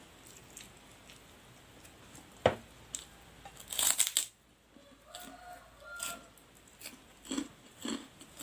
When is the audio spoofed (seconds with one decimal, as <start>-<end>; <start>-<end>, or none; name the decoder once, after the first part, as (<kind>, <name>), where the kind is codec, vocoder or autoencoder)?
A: none